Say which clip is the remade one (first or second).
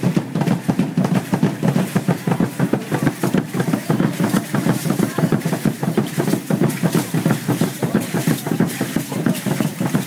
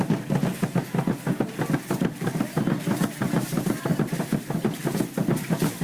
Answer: first